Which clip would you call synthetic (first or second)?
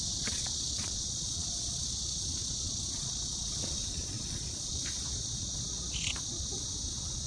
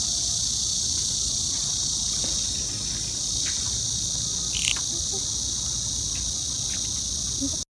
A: first